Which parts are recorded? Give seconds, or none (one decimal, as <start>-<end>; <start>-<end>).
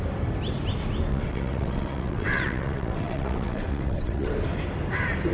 0.0-1.1; 4.3-5.3